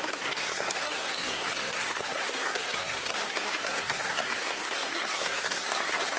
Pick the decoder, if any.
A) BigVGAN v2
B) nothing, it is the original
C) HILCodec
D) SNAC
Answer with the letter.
D